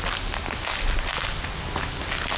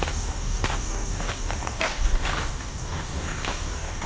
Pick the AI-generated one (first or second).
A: second